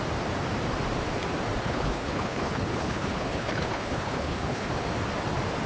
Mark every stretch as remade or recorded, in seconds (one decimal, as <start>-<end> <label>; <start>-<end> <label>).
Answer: 0.0-1.6 recorded; 1.6-4.7 remade; 4.7-5.7 recorded